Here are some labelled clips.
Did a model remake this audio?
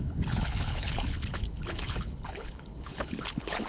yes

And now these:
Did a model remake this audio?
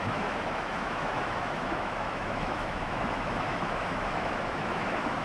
yes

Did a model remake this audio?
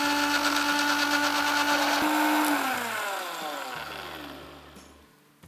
no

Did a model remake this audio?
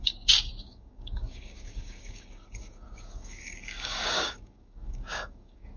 yes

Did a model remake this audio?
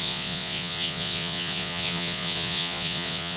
yes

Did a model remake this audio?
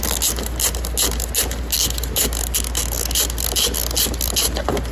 no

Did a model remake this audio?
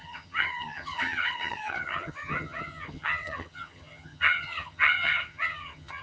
yes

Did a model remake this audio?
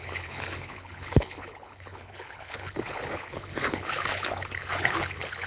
yes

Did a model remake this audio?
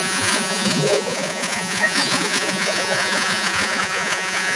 yes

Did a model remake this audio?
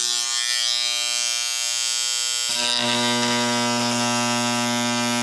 no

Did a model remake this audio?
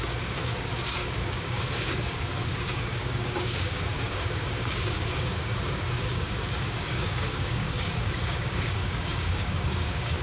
yes